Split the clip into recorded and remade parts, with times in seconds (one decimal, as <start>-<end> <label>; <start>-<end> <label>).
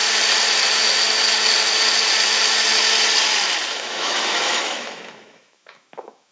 0.0-3.7 recorded; 3.7-6.3 remade